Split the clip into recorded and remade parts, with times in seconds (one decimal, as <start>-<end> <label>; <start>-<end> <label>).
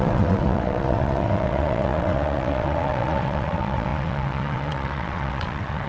0.0-5.9 remade